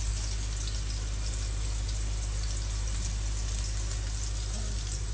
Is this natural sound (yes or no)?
yes